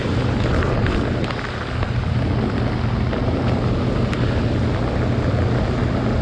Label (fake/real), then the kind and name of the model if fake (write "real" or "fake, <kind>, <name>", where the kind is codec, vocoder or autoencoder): real